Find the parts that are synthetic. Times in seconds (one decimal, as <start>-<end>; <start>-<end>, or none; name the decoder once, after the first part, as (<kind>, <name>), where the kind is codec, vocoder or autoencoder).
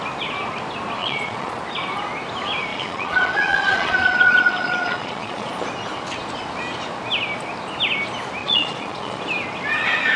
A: 1.0-1.6 (vocoder, Vocos); 2.7-5.5; 8.4-9.2